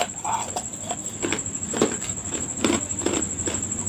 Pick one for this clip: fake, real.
fake